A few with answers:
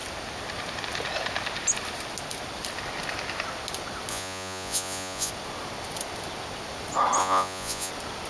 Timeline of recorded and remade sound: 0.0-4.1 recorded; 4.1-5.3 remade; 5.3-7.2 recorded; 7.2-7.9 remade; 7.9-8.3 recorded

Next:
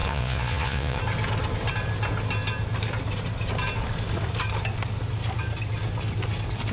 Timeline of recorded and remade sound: 0.0-1.0 remade; 1.0-6.7 recorded

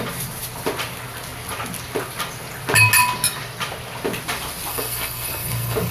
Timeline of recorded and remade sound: 0.0-4.7 recorded; 4.7-5.9 remade

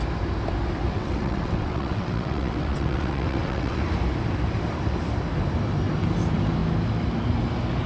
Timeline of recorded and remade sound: 0.0-0.9 recorded; 0.9-3.8 remade; 3.8-7.9 recorded